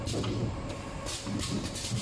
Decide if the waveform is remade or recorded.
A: recorded